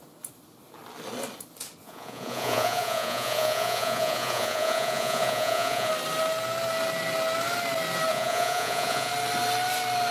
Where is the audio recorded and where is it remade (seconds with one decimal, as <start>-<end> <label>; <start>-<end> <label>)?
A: 0.0-1.8 recorded; 1.8-5.9 remade; 5.9-8.1 recorded; 8.1-9.1 remade; 9.1-10.1 recorded